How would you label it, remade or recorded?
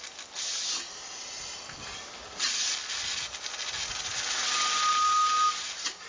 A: recorded